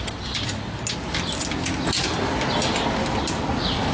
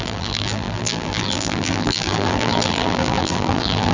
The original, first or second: first